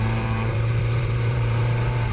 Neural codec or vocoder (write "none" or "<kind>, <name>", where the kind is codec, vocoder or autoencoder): vocoder, BigVGAN v2